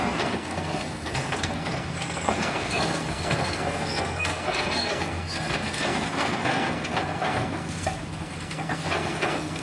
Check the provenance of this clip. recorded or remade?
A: remade